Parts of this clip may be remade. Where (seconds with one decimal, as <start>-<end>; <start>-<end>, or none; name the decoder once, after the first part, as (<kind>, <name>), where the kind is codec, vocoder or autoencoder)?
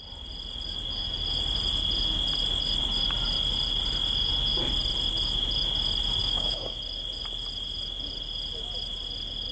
6.2-6.8 (autoencoder, DAC-VAE)